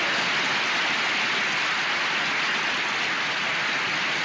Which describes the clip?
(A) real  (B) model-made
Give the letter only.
A